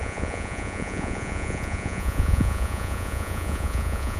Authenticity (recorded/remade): remade